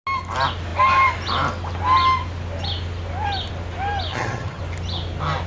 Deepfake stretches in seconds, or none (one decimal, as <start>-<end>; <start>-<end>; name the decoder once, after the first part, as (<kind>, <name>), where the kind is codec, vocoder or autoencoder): 4.1-4.6 (vocoder, HiFi-GAN)